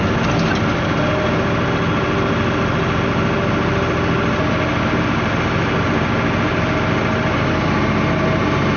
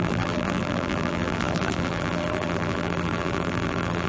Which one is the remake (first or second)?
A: second